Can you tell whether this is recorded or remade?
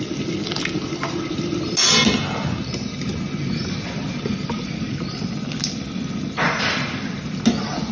recorded